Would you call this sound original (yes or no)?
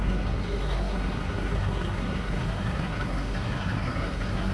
no